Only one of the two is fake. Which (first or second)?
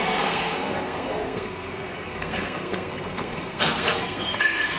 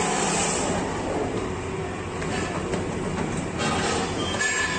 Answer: first